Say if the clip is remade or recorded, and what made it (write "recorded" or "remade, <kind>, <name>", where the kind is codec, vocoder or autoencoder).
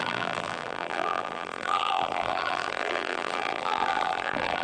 remade, vocoder, BigVGAN v2